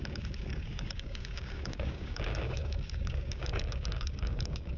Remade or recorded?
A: remade